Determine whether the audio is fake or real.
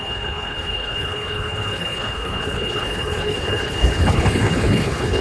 fake